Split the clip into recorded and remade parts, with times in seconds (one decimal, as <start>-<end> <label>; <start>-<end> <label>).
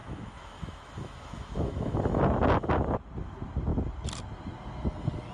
0.0-2.2 remade; 2.2-5.3 recorded